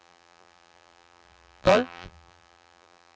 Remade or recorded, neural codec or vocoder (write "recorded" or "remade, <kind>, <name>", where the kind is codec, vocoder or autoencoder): remade, vocoder, BigVGAN v2